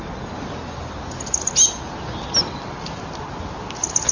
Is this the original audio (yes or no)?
yes